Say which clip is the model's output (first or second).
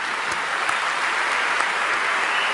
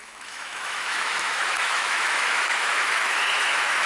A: second